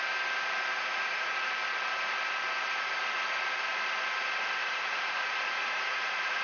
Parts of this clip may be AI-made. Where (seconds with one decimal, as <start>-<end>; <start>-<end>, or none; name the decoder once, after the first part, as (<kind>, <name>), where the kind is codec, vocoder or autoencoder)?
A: 0.7-1.3 (vocoder, Vocos); 4.6-6.4